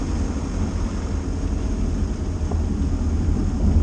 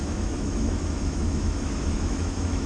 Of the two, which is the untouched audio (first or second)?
first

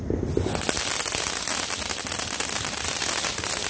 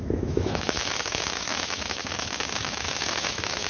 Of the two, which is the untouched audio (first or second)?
first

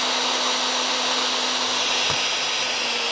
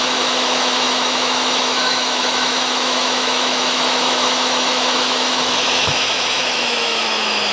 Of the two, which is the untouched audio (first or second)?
first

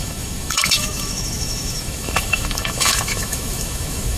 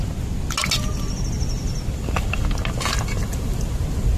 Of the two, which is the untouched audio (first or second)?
second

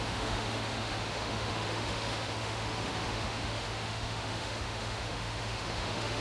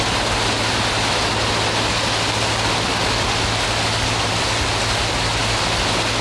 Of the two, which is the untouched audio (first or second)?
second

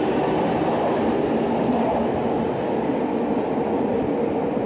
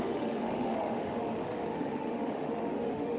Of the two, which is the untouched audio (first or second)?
first